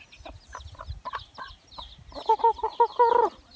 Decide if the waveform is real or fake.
real